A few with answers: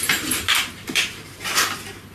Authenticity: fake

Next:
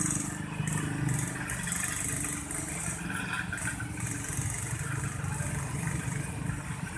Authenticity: real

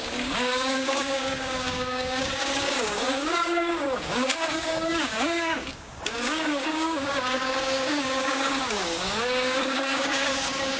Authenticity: fake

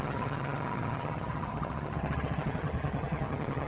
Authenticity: fake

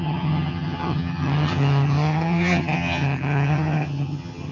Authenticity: fake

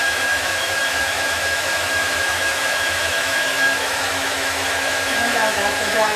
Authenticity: fake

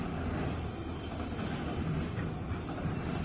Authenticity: real